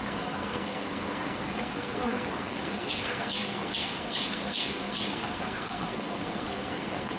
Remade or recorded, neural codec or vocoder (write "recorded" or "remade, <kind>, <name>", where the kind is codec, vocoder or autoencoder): remade, codec, SNAC